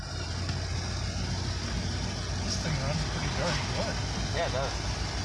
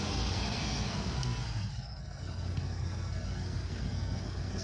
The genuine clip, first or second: first